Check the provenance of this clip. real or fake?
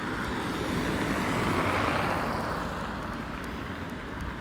real